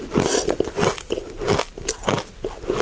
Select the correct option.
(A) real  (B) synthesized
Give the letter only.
A